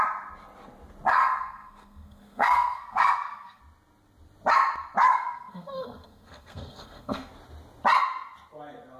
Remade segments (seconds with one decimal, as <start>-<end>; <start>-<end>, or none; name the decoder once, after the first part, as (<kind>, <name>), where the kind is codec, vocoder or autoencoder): 1.1-3.6 (codec, SNAC); 5.1-7.3